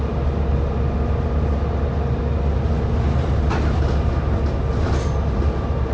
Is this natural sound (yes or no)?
yes